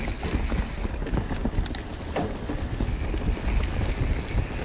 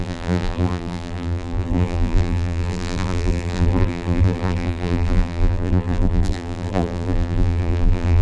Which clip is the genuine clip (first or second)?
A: first